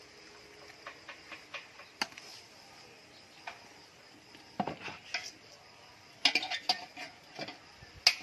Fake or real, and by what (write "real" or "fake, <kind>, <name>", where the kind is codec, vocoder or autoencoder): real